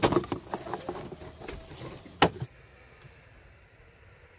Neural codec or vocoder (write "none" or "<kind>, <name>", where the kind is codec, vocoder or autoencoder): none